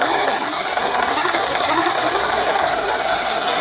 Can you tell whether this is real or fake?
fake